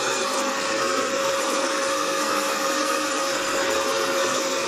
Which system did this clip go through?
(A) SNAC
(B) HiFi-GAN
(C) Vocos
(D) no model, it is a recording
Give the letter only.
A